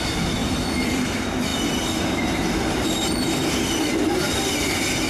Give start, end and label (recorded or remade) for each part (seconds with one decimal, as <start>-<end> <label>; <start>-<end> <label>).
0.0-1.5 recorded; 1.5-3.6 remade; 3.6-5.1 recorded